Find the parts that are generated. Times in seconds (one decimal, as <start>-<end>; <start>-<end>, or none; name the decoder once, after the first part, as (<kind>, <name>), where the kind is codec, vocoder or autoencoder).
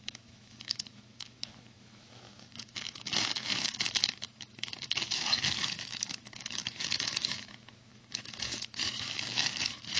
0.0-10.0 (autoencoder, DAC-VAE)